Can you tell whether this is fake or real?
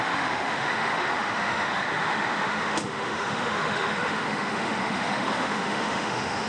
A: fake